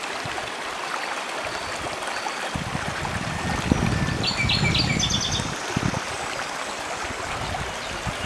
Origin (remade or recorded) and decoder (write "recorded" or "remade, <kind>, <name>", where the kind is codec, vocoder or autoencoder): recorded